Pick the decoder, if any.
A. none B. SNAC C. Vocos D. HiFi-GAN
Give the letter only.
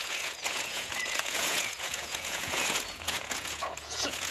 C